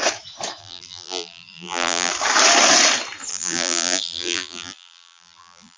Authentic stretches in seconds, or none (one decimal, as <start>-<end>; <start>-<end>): 0.0-0.6; 2.1-3.3